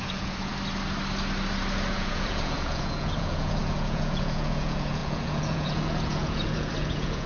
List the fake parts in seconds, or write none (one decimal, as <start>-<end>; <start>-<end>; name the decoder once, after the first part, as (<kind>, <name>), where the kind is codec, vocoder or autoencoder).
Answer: 0.0-0.5 (vocoder, Vocos); 1.9-7.3